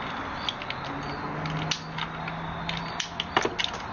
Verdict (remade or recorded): recorded